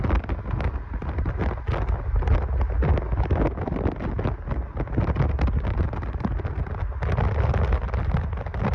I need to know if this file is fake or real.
real